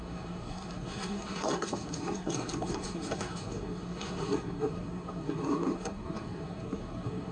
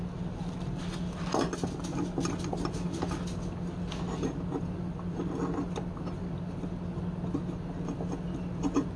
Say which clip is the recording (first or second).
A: second